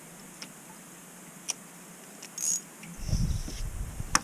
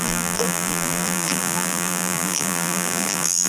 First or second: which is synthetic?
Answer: second